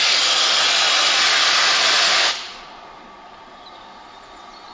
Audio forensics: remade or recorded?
recorded